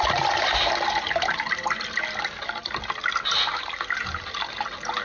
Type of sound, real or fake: real